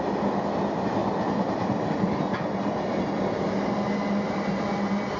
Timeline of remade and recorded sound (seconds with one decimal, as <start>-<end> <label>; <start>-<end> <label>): 0.0-5.2 recorded